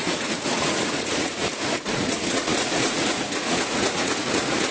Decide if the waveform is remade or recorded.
remade